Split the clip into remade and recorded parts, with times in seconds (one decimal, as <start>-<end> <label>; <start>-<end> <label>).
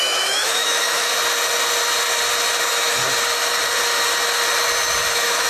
0.0-1.1 remade; 1.1-2.6 recorded; 2.6-3.0 remade; 3.0-5.1 recorded; 5.1-5.5 remade